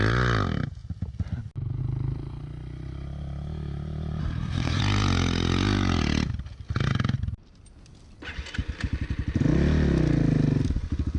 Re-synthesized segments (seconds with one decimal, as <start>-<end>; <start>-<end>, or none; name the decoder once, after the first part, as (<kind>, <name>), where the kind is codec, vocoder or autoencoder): 4.2-4.8 (codec, SNAC)

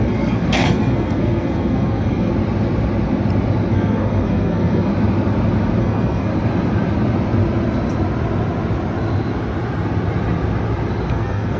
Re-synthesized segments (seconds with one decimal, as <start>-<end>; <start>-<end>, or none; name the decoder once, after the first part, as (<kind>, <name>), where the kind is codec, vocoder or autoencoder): 0.0-2.3 (codec, SNAC); 3.7-4.9; 5.8-6.3; 11.1-11.6

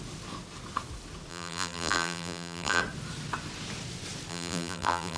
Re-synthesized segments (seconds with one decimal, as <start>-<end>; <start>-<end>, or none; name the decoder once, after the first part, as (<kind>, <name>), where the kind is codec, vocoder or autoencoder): 1.3-2.8 (vocoder, BigVGAN v2); 4.3-5.2